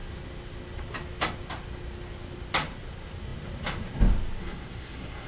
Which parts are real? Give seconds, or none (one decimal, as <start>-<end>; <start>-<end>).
0.0-4.4

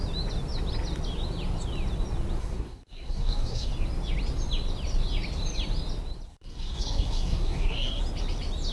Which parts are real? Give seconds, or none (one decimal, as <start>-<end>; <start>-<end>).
0.0-2.4; 3.7-6.3; 8.0-8.7

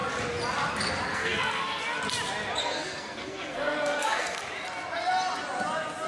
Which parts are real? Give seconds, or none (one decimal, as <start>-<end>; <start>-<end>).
0.0-1.1; 1.8-2.6; 4.4-6.1

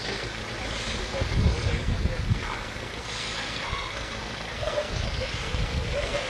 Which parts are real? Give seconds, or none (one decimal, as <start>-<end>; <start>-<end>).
0.4-1.0

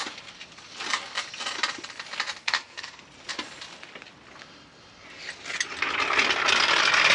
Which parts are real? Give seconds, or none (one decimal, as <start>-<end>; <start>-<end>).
0.0-2.4; 3.0-7.1